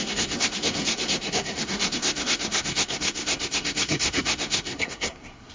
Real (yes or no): no